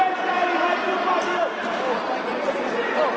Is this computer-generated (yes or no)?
no